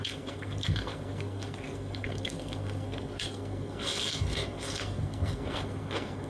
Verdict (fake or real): fake